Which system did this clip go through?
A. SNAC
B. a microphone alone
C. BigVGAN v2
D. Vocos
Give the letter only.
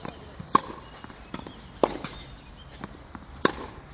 B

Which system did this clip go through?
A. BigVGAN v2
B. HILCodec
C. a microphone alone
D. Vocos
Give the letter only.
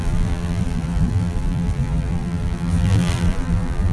A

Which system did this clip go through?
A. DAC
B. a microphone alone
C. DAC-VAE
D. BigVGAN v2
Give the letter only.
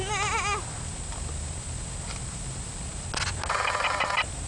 B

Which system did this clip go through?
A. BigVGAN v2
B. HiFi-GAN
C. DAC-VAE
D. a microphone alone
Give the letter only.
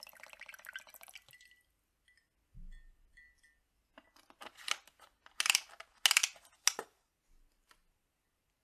D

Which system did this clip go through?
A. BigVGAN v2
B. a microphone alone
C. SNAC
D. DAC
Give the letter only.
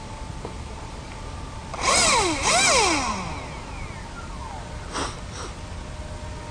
B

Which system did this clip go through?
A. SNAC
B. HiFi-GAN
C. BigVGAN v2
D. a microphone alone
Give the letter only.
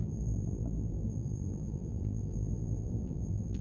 C